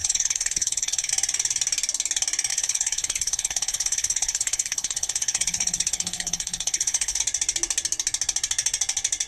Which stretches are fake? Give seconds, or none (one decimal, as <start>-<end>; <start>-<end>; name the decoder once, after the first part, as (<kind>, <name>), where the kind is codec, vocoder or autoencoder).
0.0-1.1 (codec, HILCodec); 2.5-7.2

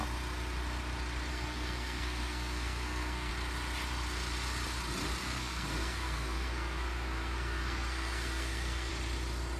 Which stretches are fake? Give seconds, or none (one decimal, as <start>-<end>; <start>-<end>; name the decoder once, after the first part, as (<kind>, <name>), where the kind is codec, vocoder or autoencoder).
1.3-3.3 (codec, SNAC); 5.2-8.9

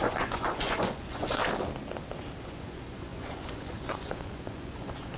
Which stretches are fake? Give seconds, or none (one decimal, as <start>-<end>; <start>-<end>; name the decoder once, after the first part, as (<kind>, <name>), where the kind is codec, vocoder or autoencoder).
0.0-1.4 (vocoder, Vocos); 2.4-5.2

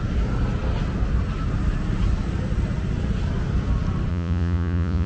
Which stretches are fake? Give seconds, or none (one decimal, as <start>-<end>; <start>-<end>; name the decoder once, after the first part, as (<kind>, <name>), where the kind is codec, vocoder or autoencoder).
4.1-5.1 (vocoder, Vocos)